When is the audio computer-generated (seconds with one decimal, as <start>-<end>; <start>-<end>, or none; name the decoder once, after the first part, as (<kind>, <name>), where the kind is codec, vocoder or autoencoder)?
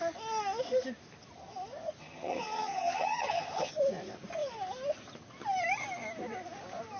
2.0-3.7 (vocoder, HiFi-GAN)